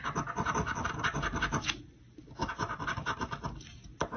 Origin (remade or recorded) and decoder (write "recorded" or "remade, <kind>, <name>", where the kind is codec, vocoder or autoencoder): recorded